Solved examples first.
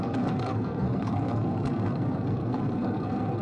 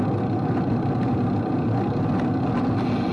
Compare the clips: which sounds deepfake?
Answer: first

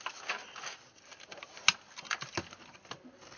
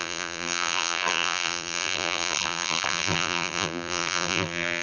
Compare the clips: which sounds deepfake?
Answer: second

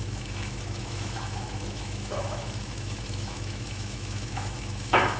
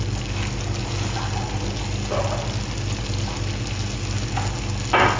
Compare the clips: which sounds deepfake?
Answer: first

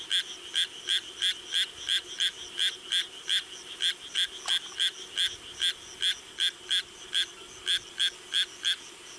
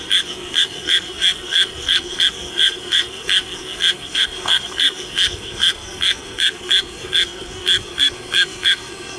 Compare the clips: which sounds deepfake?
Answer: second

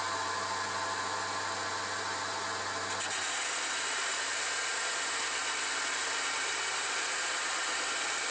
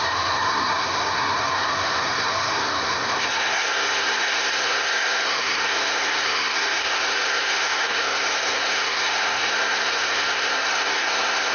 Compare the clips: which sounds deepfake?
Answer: second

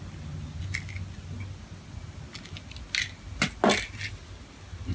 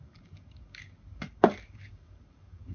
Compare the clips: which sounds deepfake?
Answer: second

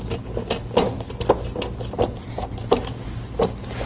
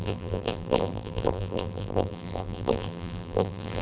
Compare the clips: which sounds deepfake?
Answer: second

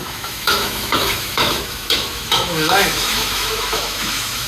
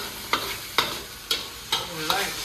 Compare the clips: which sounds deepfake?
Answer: first